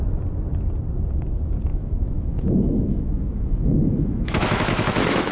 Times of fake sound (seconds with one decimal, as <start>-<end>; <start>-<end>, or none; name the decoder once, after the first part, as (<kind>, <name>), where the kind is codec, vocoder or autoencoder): 1.7-5.3 (autoencoder, DAC-VAE)